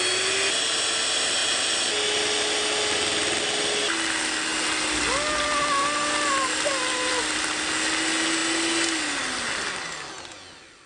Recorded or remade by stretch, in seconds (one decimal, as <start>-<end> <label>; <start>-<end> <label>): 0.0-10.9 recorded